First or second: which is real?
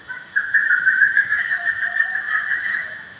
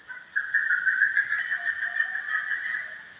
second